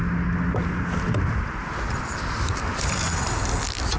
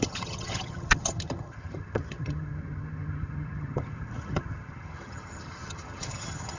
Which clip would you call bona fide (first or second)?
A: first